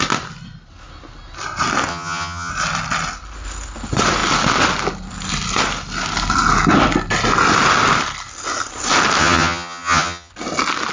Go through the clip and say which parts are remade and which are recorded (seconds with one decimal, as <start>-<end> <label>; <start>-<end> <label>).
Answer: 0.0-1.9 recorded; 1.9-2.5 remade; 2.5-9.2 recorded; 9.2-10.3 remade; 10.3-10.9 recorded

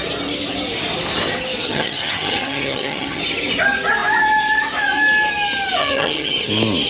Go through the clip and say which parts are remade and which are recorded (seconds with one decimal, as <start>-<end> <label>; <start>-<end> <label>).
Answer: 0.0-1.6 recorded; 1.6-3.2 remade; 3.2-5.8 recorded; 5.8-6.5 remade; 6.5-6.9 recorded

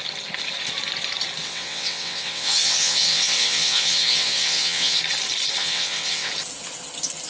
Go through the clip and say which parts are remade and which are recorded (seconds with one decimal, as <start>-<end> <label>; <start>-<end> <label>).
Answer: 0.0-1.4 recorded; 1.4-5.0 remade; 5.0-5.6 recorded; 5.6-6.3 remade; 6.3-7.3 recorded